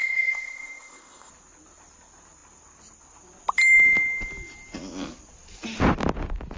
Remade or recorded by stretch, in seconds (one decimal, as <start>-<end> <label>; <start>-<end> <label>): 0.0-1.3 remade; 1.3-6.6 recorded